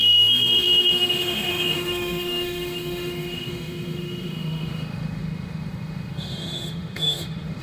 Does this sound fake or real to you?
fake